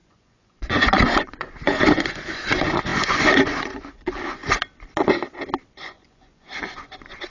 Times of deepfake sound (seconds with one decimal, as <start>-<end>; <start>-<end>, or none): 0.0-4.4; 5.7-7.3